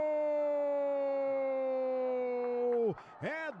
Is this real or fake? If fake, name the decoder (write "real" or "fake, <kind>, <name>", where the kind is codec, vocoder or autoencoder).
real